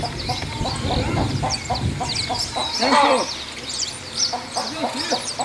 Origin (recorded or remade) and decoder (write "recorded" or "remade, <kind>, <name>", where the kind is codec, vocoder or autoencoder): remade, vocoder, BigVGAN v2